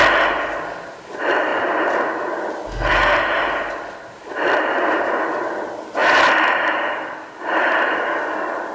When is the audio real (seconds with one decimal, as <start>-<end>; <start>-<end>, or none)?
0.0-6.0; 6.9-8.7